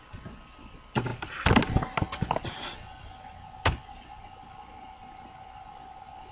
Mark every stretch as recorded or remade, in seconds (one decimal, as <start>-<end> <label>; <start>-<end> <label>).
0.0-6.3 recorded